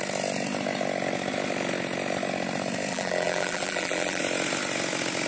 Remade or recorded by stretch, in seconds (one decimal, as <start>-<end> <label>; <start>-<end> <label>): 0.0-2.9 recorded; 2.9-4.2 remade; 4.2-5.3 recorded